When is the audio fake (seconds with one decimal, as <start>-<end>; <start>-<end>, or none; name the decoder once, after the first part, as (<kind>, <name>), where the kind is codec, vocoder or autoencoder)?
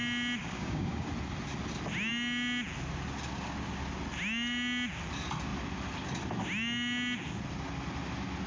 0.4-1.1 (codec, DAC)